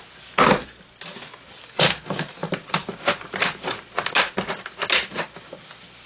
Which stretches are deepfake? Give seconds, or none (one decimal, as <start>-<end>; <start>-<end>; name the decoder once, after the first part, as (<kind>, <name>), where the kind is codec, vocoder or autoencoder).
none